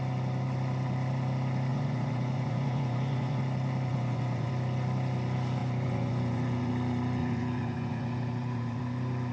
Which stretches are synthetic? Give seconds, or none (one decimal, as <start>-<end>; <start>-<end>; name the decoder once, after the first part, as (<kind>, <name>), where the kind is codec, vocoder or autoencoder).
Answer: 1.7-3.4 (vocoder, Vocos); 3.9-4.5; 5.6-6.7; 7.2-8.8